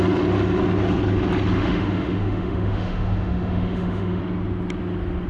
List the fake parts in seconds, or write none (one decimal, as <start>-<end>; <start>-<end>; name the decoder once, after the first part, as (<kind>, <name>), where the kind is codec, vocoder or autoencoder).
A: 1.6-4.2 (autoencoder, DAC-VAE)